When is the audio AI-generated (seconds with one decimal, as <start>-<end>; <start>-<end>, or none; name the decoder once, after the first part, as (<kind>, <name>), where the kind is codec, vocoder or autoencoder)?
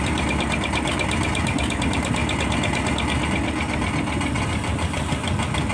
none